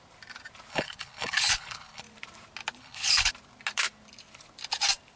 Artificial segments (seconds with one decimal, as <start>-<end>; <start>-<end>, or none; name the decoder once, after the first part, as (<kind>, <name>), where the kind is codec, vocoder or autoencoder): 0.7-2.0 (codec, HILCodec); 2.8-3.3